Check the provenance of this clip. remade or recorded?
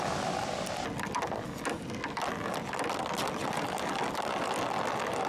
recorded